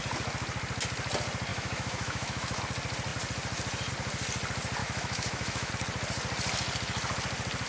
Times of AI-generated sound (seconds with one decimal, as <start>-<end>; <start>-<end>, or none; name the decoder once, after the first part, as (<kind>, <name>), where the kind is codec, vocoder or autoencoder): 1.5-2.6 (autoencoder, DAC-VAE); 4.8-5.7